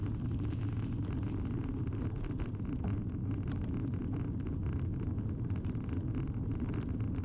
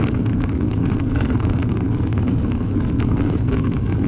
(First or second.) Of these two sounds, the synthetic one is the second